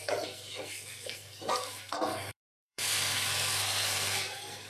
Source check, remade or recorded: remade